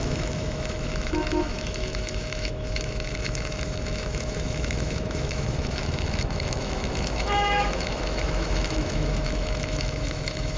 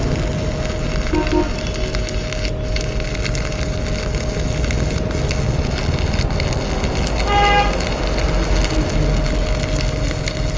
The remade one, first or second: first